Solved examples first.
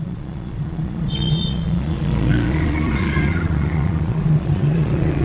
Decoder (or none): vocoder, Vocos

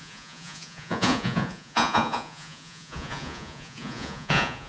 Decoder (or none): vocoder, Vocos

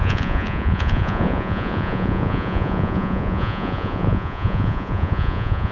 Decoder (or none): vocoder, Vocos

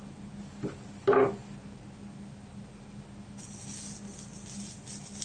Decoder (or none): none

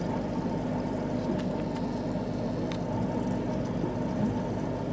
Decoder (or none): none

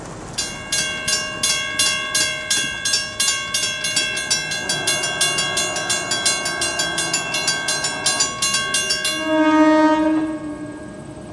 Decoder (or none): none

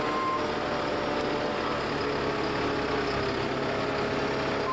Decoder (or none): none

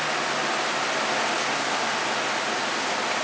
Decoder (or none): none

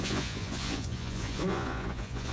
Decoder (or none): vocoder, Vocos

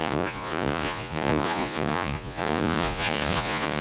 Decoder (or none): vocoder, Vocos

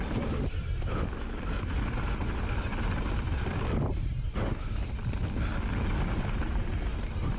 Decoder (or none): none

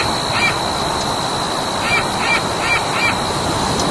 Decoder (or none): none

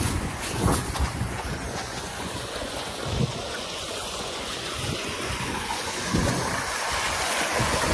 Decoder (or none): vocoder, Vocos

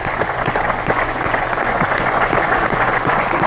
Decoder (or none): vocoder, Vocos